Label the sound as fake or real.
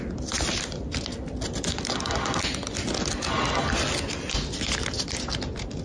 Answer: real